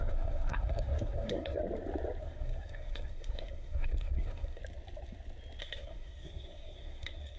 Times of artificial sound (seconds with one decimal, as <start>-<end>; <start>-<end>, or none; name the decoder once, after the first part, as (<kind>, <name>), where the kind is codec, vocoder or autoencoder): 0.0-1.6 (codec, SNAC); 2.2-4.6; 5.6-7.4